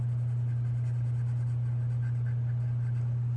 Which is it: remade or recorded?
recorded